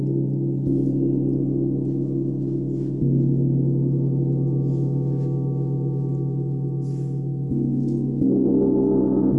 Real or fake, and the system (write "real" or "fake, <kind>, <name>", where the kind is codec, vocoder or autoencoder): real